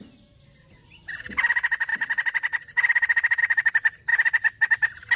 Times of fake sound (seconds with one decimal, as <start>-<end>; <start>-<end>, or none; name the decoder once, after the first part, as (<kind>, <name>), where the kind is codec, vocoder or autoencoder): none